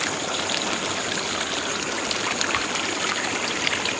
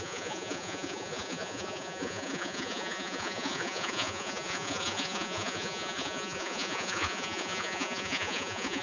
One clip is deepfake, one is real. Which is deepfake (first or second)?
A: second